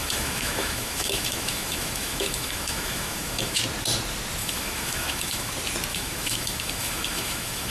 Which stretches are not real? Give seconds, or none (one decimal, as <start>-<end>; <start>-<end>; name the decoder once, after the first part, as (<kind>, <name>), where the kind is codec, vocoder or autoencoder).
0.0-3.6 (autoencoder, DAC-VAE); 4.4-5.5; 5.9-7.7